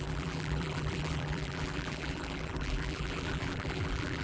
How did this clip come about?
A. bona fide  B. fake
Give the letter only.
B